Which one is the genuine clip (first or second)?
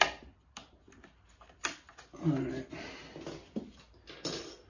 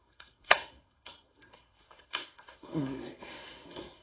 first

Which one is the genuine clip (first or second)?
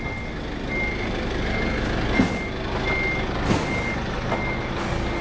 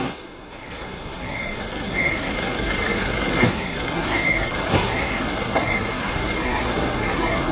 first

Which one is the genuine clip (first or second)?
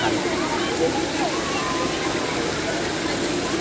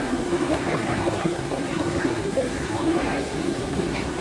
first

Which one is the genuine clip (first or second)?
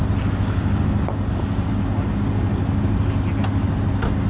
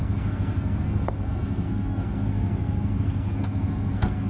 first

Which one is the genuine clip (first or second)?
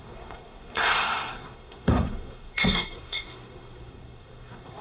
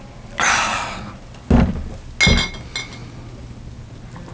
second